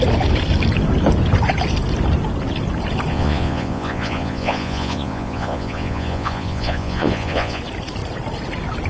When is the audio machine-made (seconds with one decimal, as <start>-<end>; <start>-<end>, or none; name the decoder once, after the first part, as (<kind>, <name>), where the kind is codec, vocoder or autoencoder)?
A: 3.1-7.6 (vocoder, Vocos)